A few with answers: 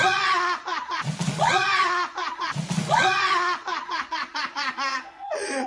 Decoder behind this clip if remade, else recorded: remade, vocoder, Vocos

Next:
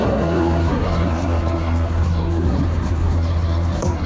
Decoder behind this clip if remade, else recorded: remade, codec, SNAC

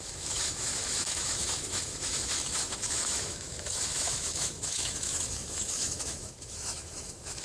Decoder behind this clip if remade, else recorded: remade, autoencoder, DAC-VAE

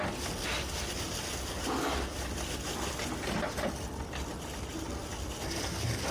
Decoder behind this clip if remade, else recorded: recorded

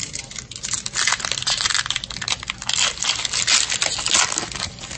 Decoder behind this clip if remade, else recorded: recorded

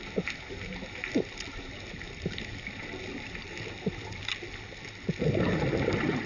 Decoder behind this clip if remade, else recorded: recorded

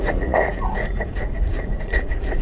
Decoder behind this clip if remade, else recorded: remade, vocoder, Vocos